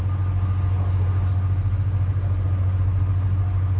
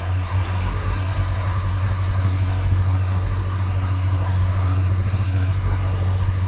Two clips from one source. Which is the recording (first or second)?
first